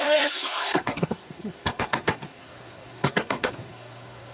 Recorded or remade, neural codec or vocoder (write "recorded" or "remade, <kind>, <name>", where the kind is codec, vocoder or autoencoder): remade, codec, SNAC